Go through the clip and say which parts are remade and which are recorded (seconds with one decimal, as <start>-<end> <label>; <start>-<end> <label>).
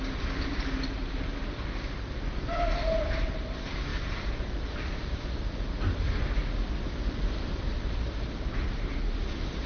0.0-9.7 recorded